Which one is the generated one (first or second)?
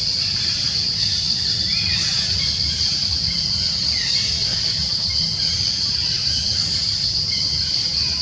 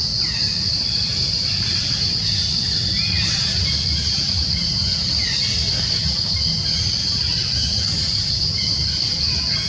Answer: first